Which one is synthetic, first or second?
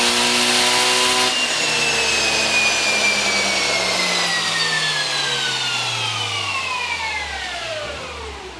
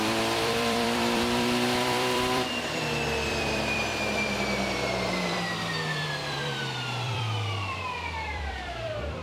second